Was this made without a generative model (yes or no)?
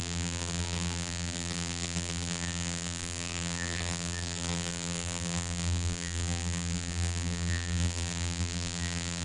no